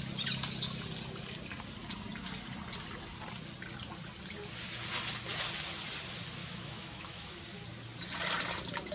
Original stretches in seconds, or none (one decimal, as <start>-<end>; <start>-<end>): 0.0-6.4; 7.4-8.9